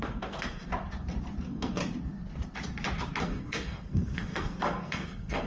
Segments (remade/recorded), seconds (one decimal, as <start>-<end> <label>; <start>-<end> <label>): 0.0-0.7 remade; 0.7-1.4 recorded; 1.4-1.8 remade; 1.8-3.2 recorded; 3.2-5.5 remade